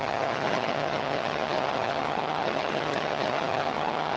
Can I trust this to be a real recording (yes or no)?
no